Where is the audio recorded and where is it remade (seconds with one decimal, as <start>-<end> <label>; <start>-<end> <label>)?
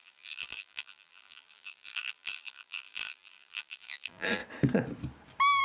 0.0-4.4 remade; 4.4-5.6 recorded